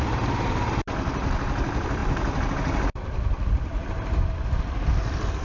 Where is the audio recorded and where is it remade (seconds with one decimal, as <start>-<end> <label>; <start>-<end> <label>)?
0.0-5.4 recorded